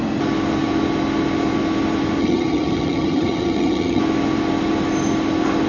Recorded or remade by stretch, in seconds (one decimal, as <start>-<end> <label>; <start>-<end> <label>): 0.0-2.2 recorded; 2.2-4.0 remade; 4.0-5.7 recorded